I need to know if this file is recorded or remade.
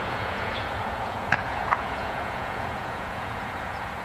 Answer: remade